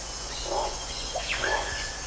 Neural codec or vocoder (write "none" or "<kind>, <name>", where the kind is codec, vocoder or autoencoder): vocoder, Vocos